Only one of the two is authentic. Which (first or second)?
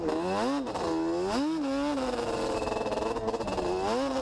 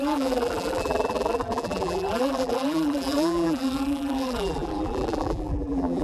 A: first